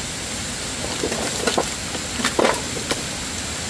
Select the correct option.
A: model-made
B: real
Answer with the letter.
B